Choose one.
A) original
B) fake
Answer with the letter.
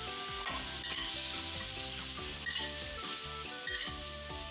A